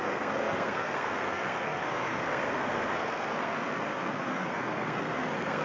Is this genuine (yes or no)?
no